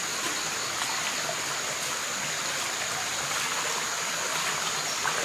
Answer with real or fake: real